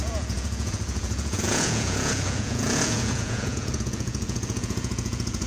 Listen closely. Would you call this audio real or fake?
fake